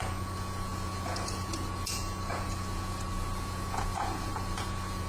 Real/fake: fake